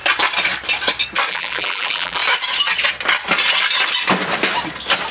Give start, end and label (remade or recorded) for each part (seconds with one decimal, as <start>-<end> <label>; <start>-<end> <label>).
0.0-1.3 recorded; 1.3-2.2 remade; 2.2-5.1 recorded